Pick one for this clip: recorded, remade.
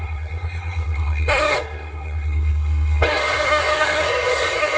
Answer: remade